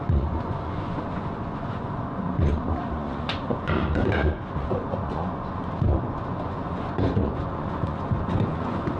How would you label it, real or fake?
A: fake